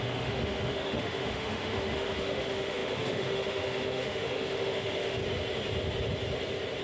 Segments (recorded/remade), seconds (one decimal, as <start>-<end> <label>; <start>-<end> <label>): 0.0-5.2 remade; 5.2-6.8 recorded